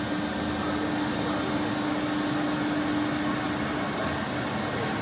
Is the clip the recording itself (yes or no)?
yes